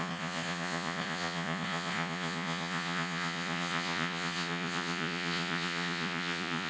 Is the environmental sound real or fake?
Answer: fake